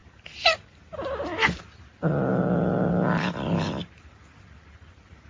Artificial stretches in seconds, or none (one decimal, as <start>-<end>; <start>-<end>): none